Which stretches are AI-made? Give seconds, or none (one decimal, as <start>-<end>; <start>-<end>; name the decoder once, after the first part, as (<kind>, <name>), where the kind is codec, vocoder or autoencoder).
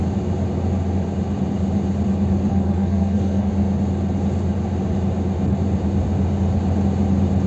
2.5-3.5 (codec, SNAC)